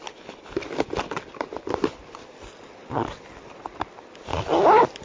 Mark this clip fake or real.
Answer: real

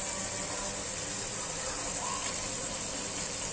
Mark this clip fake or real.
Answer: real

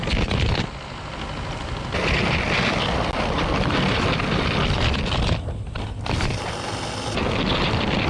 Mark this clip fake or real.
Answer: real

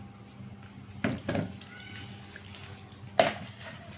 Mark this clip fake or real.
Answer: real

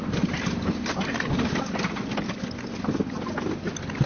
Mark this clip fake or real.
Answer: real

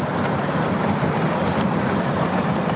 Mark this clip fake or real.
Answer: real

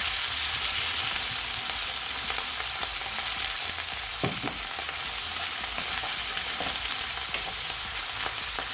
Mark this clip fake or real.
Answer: real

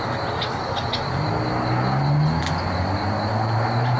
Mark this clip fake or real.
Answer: real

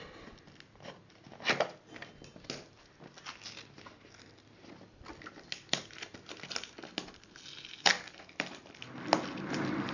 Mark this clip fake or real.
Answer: real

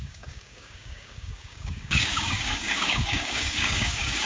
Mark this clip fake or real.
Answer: fake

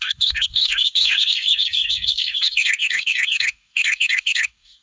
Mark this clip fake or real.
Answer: fake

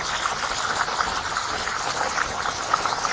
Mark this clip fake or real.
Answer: real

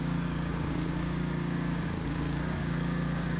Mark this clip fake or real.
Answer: fake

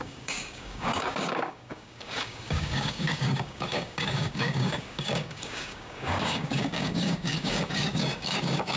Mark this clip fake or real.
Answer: fake